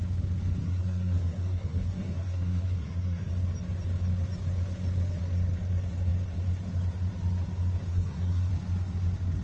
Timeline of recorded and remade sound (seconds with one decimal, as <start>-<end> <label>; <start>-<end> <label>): 0.0-0.6 recorded; 0.6-3.3 remade; 3.3-7.9 recorded; 7.9-8.5 remade; 8.5-9.4 recorded